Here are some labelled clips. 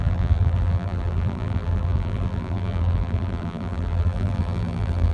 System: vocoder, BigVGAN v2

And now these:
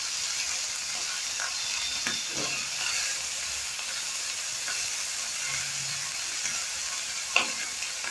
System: none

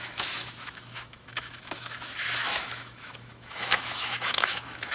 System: autoencoder, DAC-VAE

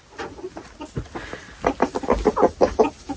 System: none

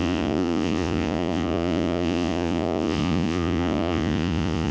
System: vocoder, Vocos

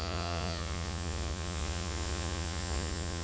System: vocoder, Vocos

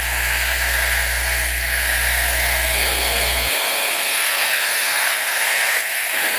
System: codec, SNAC